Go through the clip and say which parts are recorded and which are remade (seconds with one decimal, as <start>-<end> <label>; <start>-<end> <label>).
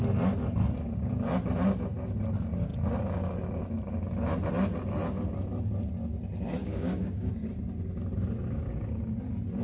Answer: 0.0-6.6 recorded; 6.6-7.3 remade; 7.3-9.6 recorded